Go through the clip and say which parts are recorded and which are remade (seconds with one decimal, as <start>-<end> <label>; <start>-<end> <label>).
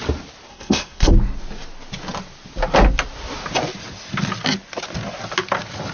0.0-0.5 recorded; 0.5-1.1 remade; 1.1-5.9 recorded